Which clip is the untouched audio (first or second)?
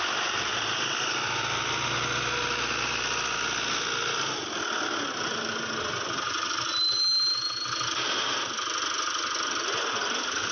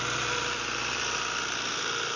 first